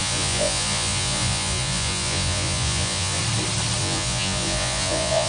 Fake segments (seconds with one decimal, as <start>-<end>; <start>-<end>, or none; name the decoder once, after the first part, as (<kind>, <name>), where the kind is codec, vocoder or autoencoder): 0.0-3.2 (vocoder, Vocos); 3.8-5.3